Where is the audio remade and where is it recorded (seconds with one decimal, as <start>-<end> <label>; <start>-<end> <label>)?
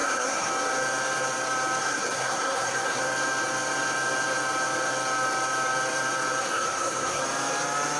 0.0-0.5 remade; 0.5-1.8 recorded; 1.8-3.0 remade; 3.0-6.4 recorded; 6.4-7.2 remade; 7.2-8.0 recorded